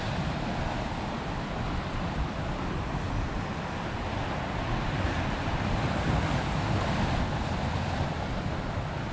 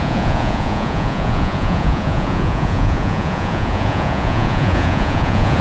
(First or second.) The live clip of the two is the first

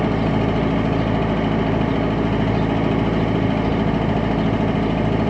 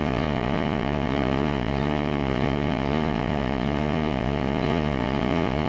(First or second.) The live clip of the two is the first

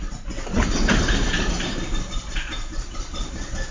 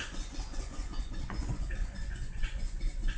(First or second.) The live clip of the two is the first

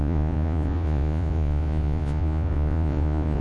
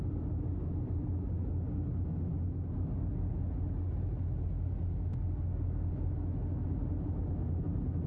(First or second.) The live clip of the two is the second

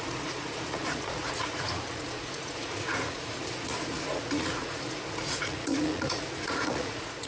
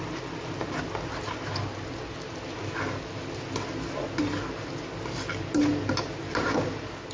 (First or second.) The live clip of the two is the second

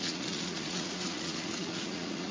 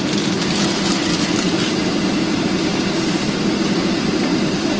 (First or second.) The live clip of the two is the second